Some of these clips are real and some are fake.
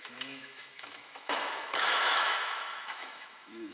fake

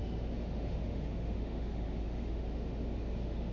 fake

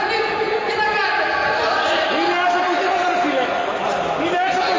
real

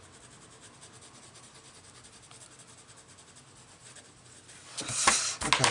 real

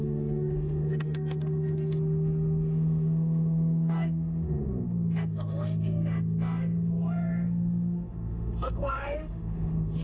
fake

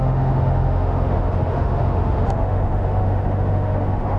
fake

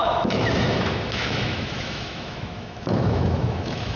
fake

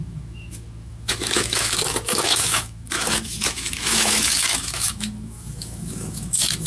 fake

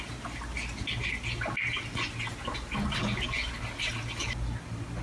real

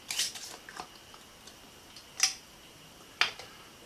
real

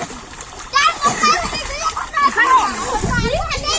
real